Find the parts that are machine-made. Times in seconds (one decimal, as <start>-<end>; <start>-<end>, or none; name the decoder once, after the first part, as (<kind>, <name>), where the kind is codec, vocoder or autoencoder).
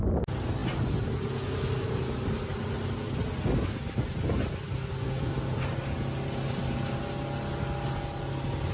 none